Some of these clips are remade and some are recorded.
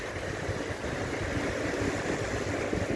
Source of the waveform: recorded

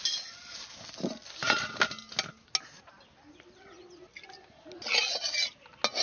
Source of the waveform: recorded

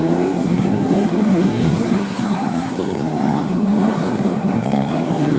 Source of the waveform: remade